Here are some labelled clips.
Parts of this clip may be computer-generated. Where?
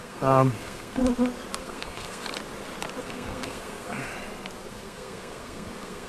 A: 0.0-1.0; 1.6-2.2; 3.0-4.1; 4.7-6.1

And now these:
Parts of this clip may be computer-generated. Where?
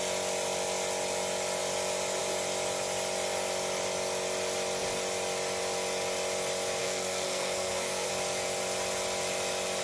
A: 6.8-8.1